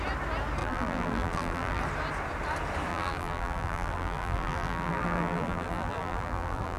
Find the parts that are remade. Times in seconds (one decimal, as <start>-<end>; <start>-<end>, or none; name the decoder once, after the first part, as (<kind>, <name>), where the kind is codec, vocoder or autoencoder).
0.6-1.8 (vocoder, BigVGAN v2); 2.9-6.8